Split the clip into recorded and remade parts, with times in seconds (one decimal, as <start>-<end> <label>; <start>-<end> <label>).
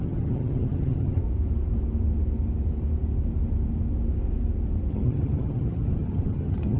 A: 0.0-1.2 remade; 1.2-4.9 recorded; 4.9-6.8 remade